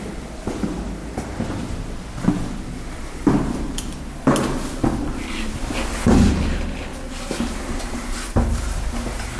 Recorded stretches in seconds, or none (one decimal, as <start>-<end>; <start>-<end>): 1.0-1.6; 6.9-7.8